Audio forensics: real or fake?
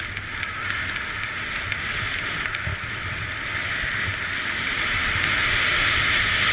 real